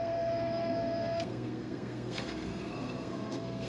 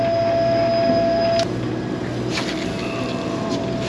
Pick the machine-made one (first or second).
first